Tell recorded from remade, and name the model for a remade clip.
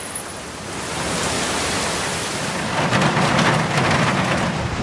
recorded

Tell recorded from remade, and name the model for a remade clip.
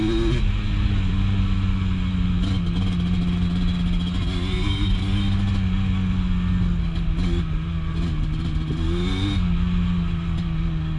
recorded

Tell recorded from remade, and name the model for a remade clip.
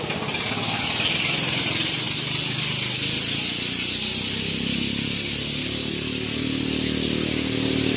recorded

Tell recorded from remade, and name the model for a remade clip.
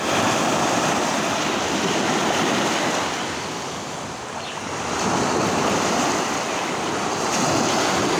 recorded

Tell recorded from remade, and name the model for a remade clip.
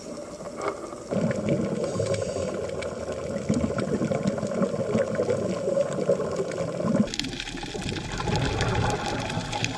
recorded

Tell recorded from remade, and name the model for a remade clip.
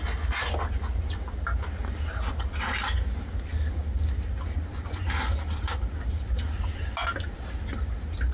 recorded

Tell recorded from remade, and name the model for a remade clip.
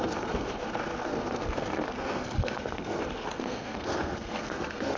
remade, codec, SNAC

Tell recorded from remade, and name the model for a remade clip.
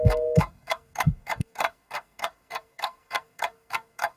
remade, codec, SNAC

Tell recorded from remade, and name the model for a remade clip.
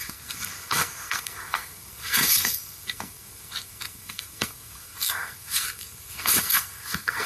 remade, codec, SNAC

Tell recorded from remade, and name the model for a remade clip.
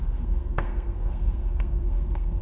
remade, codec, SNAC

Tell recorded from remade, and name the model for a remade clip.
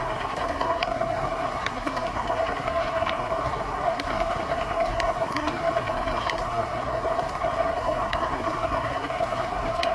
remade, codec, SNAC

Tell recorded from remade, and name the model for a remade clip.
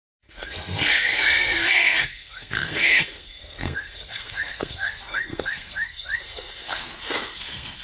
remade, codec, SNAC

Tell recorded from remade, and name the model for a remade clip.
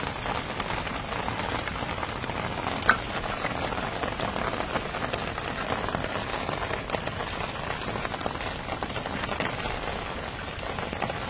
recorded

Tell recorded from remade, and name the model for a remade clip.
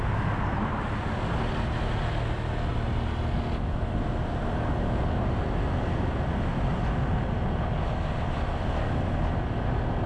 recorded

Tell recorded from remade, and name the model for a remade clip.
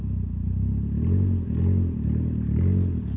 recorded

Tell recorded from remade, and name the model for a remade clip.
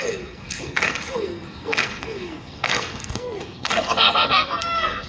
remade, codec, SNAC